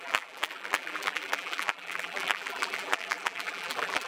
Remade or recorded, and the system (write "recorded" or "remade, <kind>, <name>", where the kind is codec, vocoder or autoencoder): remade, vocoder, BigVGAN v2